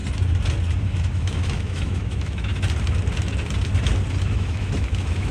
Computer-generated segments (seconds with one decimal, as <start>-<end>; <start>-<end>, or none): 0.8-2.5; 4.2-5.3